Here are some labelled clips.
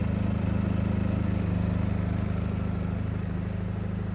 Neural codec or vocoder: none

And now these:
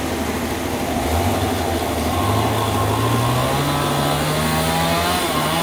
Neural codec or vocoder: none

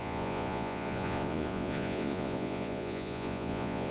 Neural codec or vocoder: vocoder, Vocos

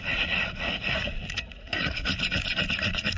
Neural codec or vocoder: vocoder, Vocos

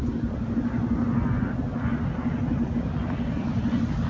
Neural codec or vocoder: none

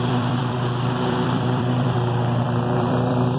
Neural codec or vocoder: vocoder, BigVGAN v2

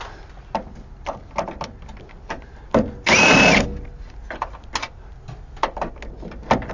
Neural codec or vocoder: none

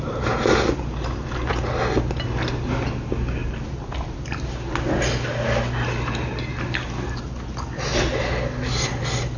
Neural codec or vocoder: none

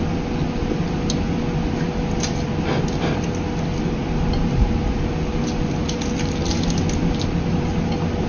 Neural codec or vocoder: none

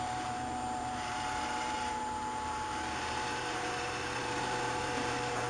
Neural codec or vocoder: vocoder, BigVGAN v2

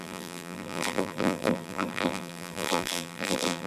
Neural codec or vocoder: vocoder, BigVGAN v2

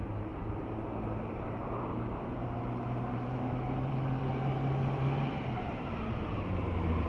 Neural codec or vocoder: vocoder, BigVGAN v2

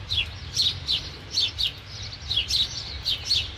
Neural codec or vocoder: none